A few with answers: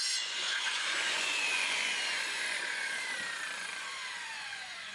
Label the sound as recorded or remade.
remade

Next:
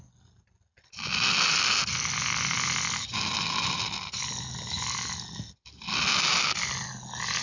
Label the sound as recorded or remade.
recorded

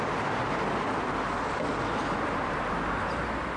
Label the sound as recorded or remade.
recorded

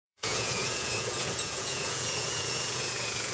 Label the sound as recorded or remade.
remade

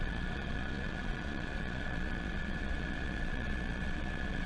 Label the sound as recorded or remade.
remade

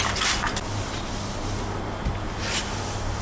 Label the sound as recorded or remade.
recorded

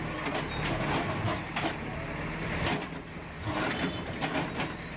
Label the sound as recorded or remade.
recorded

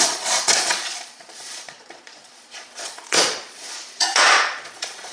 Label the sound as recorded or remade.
remade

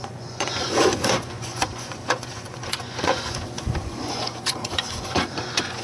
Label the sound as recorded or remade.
remade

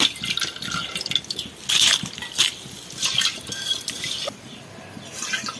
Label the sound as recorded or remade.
recorded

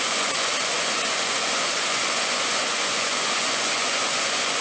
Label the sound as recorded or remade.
remade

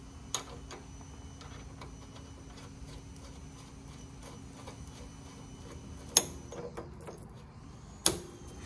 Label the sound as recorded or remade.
recorded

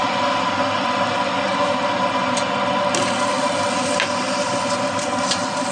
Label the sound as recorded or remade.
recorded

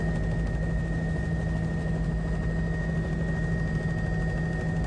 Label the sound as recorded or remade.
recorded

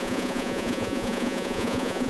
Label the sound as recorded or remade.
remade